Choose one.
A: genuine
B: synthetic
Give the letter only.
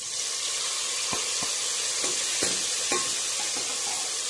A